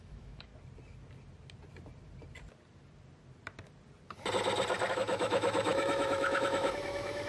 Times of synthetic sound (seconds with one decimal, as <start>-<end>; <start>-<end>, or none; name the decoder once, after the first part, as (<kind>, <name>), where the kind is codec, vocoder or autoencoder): 0.0-0.5 (autoencoder, DAC-VAE); 4.9-7.3